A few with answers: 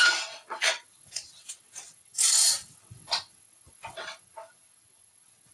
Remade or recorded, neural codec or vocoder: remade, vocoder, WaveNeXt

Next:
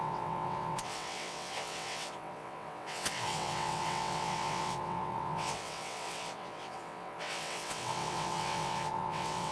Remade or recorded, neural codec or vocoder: remade, vocoder, WaveNeXt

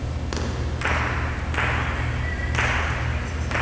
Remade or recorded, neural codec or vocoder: recorded